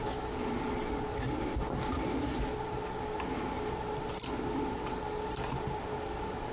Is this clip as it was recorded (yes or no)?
yes